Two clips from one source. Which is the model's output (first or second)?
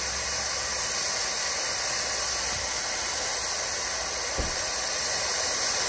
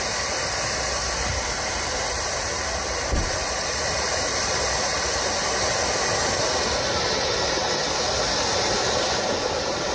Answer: second